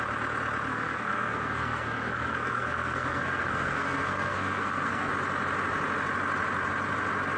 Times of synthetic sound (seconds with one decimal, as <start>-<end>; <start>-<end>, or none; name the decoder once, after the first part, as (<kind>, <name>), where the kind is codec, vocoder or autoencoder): 0.7-5.1 (codec, SNAC)